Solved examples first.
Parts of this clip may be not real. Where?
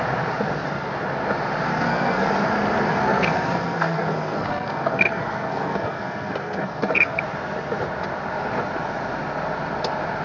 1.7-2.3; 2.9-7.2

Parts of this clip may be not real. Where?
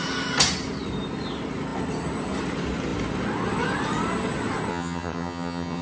4.7-5.8